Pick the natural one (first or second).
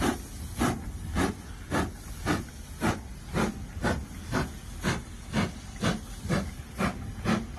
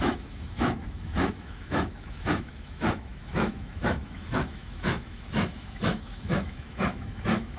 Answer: first